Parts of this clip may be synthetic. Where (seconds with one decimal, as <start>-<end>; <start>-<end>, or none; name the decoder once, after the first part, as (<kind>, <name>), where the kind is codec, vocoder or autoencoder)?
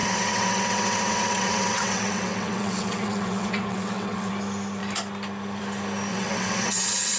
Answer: 0.0-4.3 (vocoder, WaveNeXt); 6.1-7.2